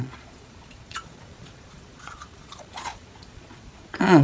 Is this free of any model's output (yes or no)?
no